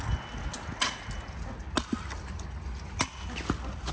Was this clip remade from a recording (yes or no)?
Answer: no